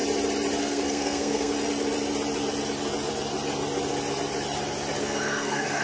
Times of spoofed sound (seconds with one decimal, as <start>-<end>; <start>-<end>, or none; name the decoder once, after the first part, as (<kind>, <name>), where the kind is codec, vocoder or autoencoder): 0.6-1.5 (codec, SNAC); 5.0-5.8